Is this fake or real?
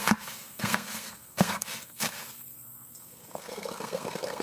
fake